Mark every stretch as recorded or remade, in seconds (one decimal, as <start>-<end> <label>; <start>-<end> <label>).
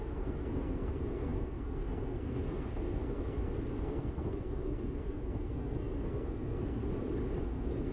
0.0-6.8 remade; 6.8-7.4 recorded; 7.4-7.9 remade